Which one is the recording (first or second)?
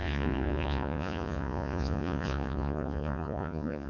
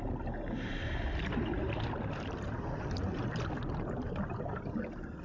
second